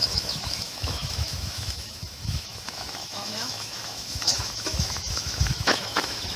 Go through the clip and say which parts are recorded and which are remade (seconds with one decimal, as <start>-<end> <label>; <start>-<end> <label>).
0.0-6.4 remade